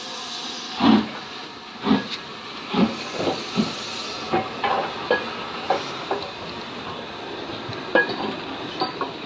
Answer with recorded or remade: recorded